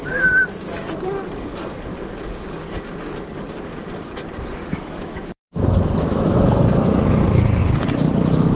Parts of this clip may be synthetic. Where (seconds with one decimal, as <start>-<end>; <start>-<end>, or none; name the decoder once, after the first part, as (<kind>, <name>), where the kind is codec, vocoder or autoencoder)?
4.6-6.3 (autoencoder, DAC-VAE)